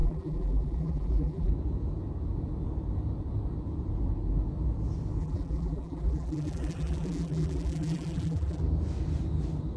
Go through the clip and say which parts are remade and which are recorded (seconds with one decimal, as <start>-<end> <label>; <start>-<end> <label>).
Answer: 0.0-1.5 remade; 1.5-5.2 recorded; 5.2-8.6 remade; 8.6-9.8 recorded